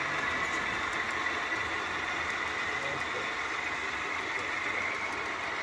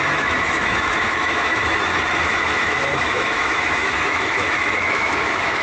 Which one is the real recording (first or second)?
first